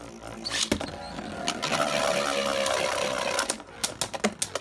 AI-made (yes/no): no